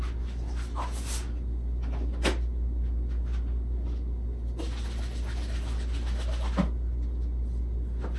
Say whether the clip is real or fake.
real